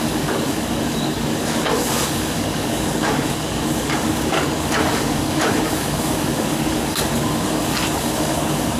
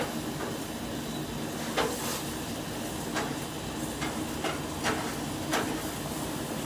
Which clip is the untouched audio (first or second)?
second